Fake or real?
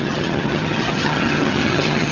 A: fake